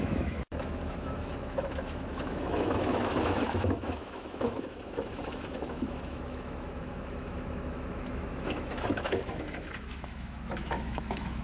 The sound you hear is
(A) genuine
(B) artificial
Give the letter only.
B